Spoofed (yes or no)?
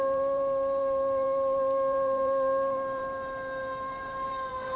yes